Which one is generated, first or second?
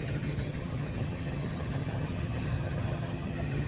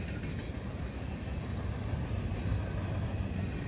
first